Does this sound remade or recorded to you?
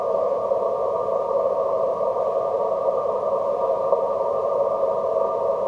recorded